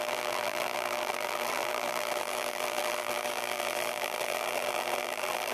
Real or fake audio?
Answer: fake